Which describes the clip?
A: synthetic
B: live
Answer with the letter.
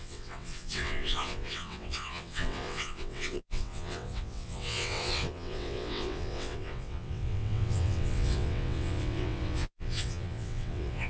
A